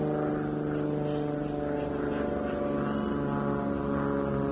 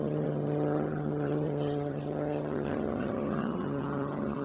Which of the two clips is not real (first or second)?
second